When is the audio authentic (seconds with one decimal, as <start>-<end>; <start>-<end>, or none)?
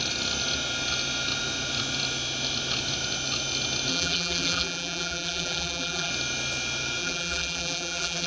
0.0-3.9; 6.1-7.0